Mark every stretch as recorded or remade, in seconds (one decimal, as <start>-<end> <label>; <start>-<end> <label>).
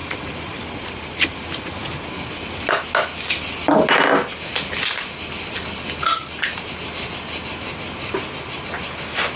0.0-0.8 remade; 0.8-6.2 recorded; 6.2-6.7 remade; 6.7-9.4 recorded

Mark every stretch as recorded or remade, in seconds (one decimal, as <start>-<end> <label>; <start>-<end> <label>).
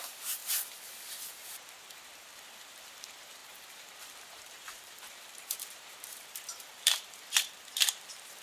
0.0-0.4 remade; 0.4-1.3 recorded; 1.3-8.4 remade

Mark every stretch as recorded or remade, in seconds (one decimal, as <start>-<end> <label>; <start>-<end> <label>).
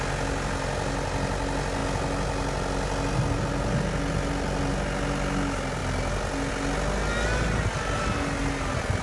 0.0-9.0 recorded